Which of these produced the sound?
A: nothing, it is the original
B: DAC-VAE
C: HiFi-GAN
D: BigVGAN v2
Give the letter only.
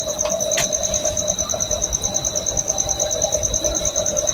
A